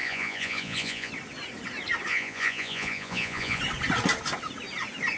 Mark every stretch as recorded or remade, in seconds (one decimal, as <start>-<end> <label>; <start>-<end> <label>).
0.0-1.1 remade; 1.1-2.1 recorded; 2.1-3.6 remade; 3.6-5.2 recorded